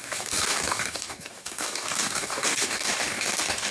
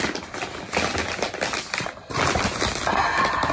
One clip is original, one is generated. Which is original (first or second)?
second